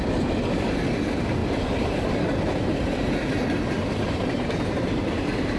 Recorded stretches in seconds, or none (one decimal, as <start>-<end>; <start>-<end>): 0.0-5.6